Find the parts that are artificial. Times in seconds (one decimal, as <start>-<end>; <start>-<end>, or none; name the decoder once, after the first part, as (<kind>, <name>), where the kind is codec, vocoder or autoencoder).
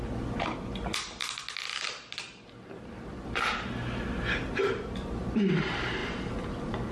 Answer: none